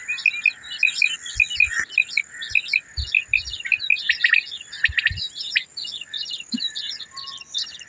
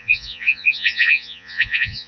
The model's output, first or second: second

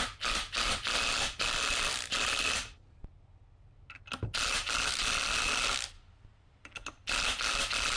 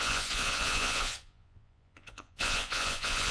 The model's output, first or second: second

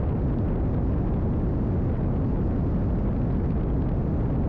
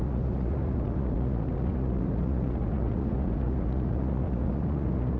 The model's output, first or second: second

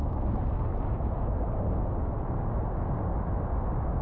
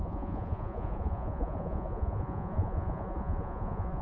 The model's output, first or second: second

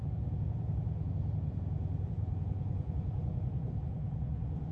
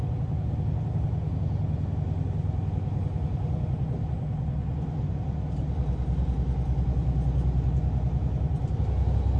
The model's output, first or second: first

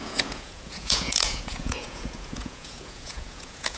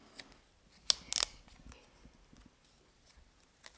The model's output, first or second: first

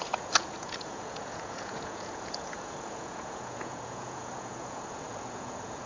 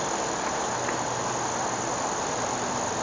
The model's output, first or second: first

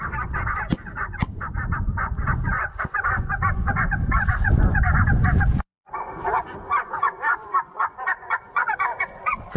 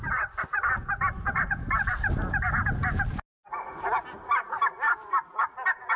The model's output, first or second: first